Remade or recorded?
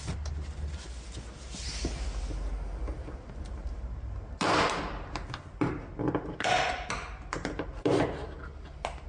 recorded